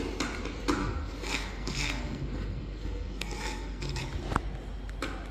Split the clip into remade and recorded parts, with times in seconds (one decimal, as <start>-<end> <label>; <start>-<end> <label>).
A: 0.0-0.8 recorded; 0.8-4.0 remade; 4.0-5.3 recorded